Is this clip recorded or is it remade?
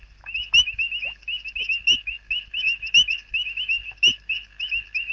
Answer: remade